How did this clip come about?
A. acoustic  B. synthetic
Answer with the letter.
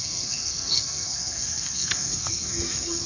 B